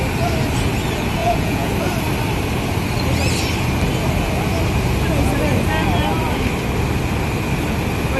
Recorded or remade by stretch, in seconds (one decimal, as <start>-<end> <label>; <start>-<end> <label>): 0.0-1.2 recorded; 1.2-1.7 remade; 1.7-8.2 recorded